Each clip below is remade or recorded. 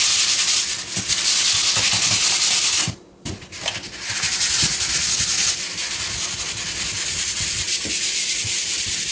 recorded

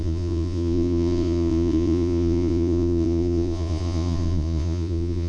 remade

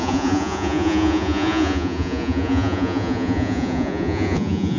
remade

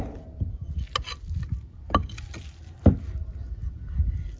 recorded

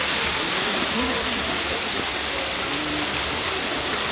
recorded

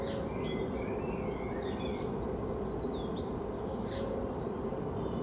recorded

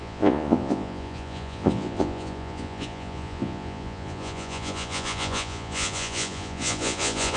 remade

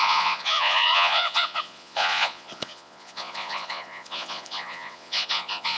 remade